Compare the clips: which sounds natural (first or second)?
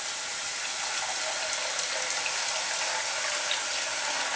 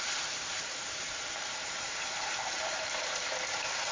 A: first